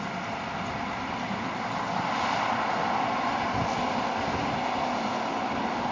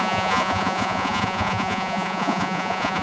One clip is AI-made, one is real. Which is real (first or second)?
first